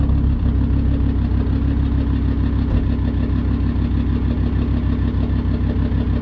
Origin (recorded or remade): recorded